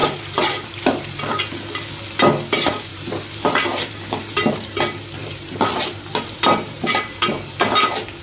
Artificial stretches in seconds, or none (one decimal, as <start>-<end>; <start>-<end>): 0.0-1.2; 2.9-4.8; 5.2-8.2